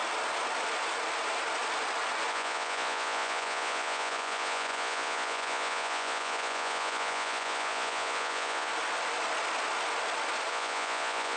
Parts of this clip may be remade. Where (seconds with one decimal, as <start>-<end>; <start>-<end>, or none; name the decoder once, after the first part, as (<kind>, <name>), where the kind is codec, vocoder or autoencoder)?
2.3-8.7 (vocoder, Vocos); 10.5-11.4